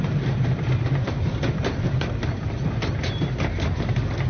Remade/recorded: remade